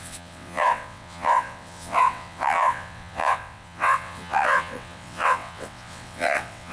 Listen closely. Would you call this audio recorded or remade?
remade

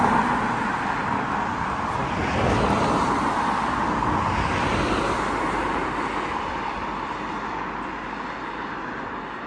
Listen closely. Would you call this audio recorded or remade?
recorded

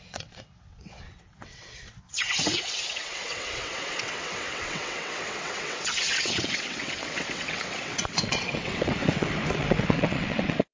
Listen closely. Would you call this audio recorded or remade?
remade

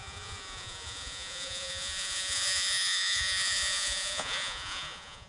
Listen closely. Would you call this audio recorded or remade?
remade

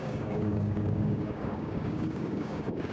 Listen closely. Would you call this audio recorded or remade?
remade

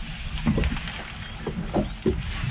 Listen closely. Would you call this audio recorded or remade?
recorded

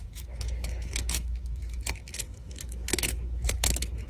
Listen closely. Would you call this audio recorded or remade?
remade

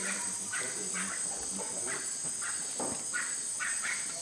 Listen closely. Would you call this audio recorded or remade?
remade